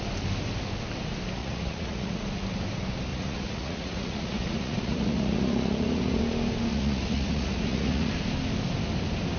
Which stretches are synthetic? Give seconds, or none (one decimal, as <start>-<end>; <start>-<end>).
1.4-2.2; 3.1-6.2; 6.7-8.1